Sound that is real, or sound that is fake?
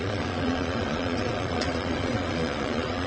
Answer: fake